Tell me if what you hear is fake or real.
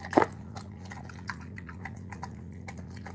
fake